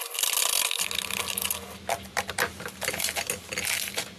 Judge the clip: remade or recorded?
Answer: recorded